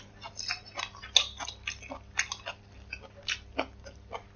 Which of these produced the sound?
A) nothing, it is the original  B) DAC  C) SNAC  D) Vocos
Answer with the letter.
A